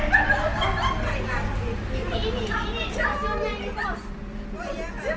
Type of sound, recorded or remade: recorded